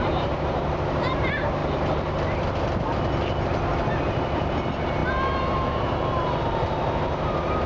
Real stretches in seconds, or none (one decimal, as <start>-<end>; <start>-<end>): 1.6-3.9